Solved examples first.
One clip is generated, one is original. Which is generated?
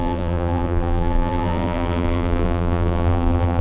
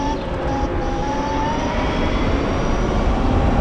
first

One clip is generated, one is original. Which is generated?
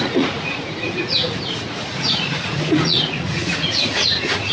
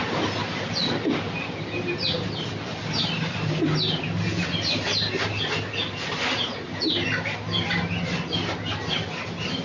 first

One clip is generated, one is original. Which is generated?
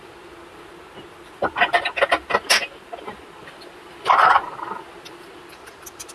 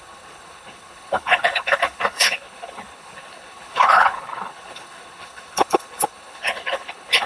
second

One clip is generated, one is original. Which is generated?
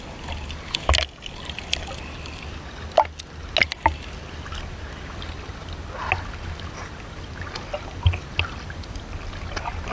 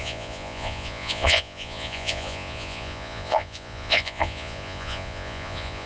second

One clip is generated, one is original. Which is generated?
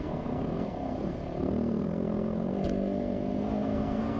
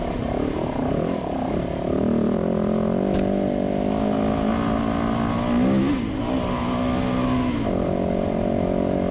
first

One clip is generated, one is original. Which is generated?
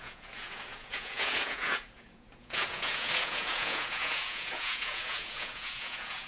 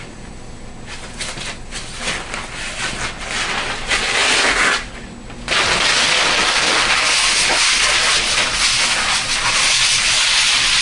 first